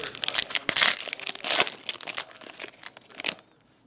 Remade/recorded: recorded